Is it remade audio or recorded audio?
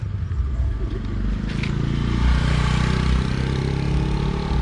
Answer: recorded